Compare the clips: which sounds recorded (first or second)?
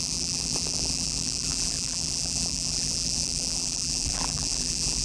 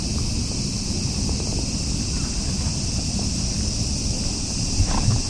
second